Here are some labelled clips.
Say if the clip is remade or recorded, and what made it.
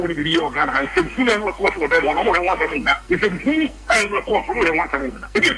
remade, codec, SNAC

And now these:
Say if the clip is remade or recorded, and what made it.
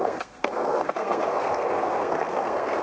remade, codec, SNAC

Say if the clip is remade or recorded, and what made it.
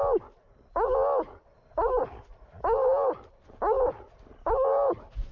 recorded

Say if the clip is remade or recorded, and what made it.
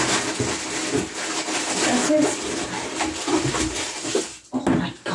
recorded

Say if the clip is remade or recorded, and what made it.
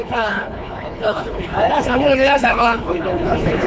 remade, codec, HILCodec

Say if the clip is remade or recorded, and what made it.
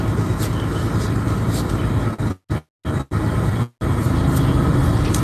recorded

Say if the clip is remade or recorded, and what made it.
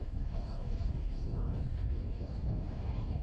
remade, codec, DAC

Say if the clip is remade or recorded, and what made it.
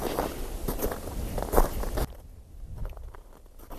recorded